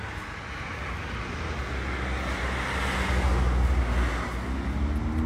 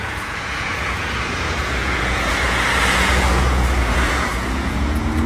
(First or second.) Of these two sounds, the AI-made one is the second